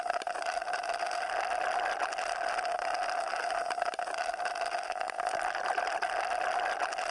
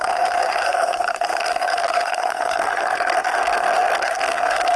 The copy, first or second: second